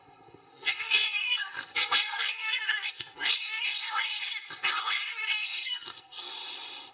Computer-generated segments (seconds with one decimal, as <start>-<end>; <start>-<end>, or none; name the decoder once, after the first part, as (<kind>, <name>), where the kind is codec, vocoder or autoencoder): 0.5-3.6 (codec, SNAC); 5.1-6.3